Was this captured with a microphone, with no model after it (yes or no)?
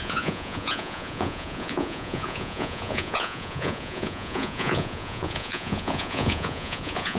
no